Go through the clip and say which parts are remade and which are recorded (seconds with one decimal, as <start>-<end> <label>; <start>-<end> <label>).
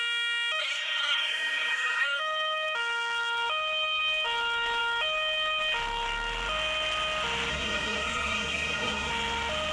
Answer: 0.0-0.6 recorded; 0.6-2.2 remade; 2.2-7.5 recorded; 7.5-9.1 remade; 9.1-9.7 recorded